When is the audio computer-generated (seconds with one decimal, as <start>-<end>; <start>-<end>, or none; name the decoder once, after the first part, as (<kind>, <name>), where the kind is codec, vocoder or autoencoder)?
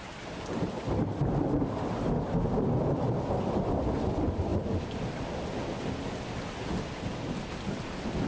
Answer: none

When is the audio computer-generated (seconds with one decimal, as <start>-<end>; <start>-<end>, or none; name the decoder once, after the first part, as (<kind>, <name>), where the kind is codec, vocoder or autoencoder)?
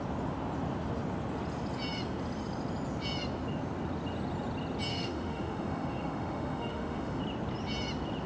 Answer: 4.9-7.2 (autoencoder, DAC-VAE)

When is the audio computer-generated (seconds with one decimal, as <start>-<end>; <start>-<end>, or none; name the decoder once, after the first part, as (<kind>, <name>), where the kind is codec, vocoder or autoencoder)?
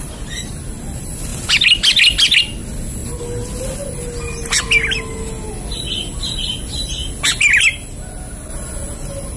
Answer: none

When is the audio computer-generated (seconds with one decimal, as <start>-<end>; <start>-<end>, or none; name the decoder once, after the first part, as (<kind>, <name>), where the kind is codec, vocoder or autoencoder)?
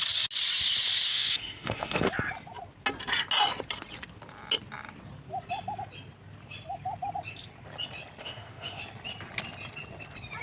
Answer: 1.1-2.1 (autoencoder, DAC-VAE); 8.2-8.8